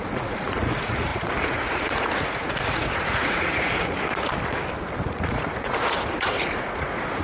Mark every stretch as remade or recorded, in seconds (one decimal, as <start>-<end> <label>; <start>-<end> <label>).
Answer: 0.0-4.3 remade; 4.3-5.1 recorded; 5.1-7.2 remade

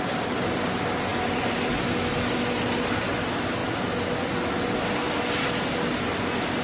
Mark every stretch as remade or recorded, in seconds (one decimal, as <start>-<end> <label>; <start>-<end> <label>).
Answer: 0.0-6.6 recorded

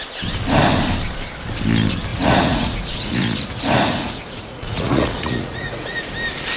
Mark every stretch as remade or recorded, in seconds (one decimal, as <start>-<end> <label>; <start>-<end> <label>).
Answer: 0.0-2.1 recorded; 2.1-6.1 remade; 6.1-6.6 recorded

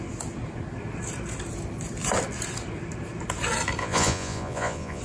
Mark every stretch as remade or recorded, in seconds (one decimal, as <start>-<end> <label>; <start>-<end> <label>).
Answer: 0.0-3.8 recorded; 3.8-5.0 remade

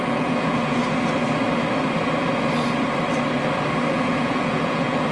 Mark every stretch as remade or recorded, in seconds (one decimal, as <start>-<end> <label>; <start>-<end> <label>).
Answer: 0.0-0.8 remade; 0.8-3.9 recorded; 3.9-5.1 remade

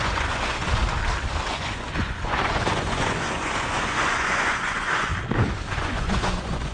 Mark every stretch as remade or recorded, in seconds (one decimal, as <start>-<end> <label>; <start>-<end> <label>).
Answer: 0.0-0.8 remade; 0.8-1.5 recorded; 1.5-5.1 remade; 5.1-5.7 recorded; 5.7-6.7 remade